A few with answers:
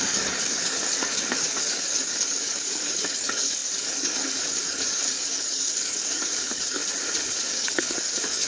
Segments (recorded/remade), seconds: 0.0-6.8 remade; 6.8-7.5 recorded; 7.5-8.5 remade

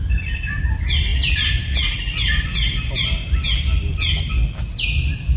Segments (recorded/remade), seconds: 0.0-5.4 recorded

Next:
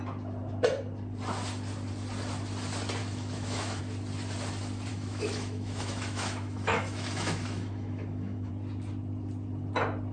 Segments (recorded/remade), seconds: 0.0-3.0 recorded; 3.0-3.8 remade; 3.8-4.9 recorded; 4.9-8.5 remade; 8.5-10.1 recorded

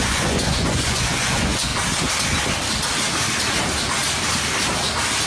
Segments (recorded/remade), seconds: 0.0-1.7 remade; 1.7-5.3 recorded

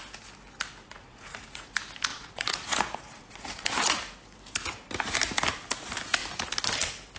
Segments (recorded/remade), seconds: 0.0-0.8 recorded; 0.8-1.7 remade; 1.7-2.1 recorded; 2.1-3.7 remade; 3.7-7.2 recorded

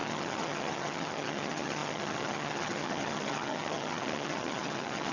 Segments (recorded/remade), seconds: 0.0-5.1 remade

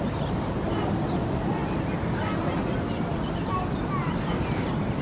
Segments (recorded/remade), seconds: 0.0-5.0 recorded